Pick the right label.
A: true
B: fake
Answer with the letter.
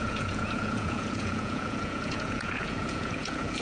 B